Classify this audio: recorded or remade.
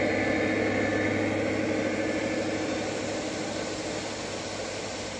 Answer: recorded